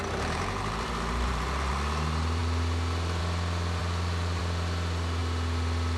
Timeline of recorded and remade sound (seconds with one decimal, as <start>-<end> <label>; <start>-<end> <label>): 0.0-1.7 remade; 1.7-3.8 recorded; 3.8-4.4 remade; 4.4-6.0 recorded